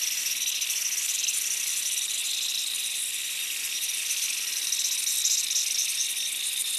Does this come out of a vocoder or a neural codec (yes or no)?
no